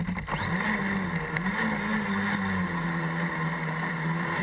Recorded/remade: recorded